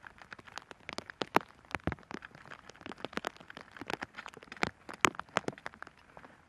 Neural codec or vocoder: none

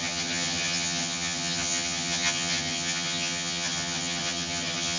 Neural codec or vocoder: vocoder, HiFi-GAN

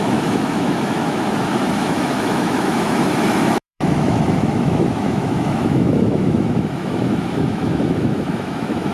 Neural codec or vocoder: autoencoder, DAC-VAE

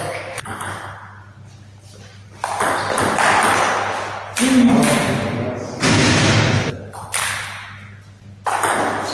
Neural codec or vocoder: none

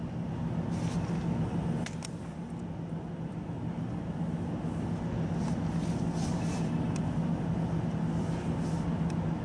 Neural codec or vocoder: none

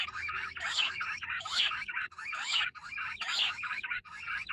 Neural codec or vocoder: codec, DAC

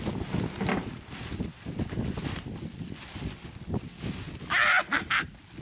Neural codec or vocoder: none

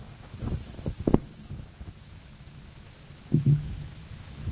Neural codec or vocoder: autoencoder, DAC-VAE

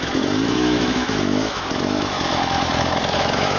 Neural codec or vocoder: autoencoder, DAC-VAE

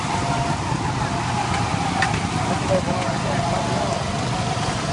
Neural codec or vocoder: none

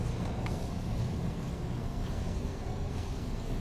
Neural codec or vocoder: codec, SNAC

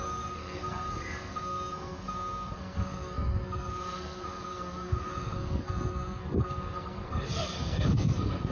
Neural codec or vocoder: codec, SNAC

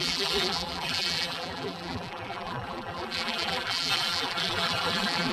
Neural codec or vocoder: vocoder, BigVGAN v2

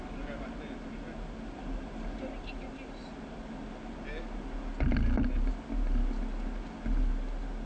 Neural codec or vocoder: none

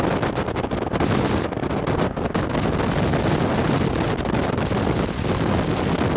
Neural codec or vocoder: none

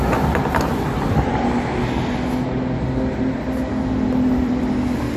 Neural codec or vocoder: none